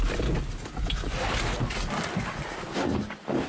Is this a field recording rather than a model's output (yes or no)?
yes